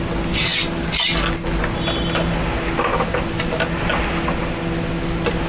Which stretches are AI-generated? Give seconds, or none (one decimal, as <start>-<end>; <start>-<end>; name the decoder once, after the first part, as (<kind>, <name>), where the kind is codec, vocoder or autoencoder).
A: none